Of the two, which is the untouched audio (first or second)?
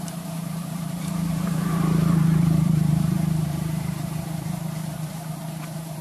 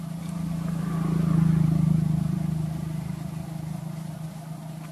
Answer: second